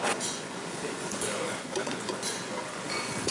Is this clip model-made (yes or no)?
yes